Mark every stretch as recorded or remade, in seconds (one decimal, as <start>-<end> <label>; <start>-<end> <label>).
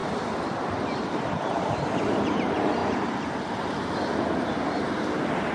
0.0-1.6 remade; 1.6-5.5 recorded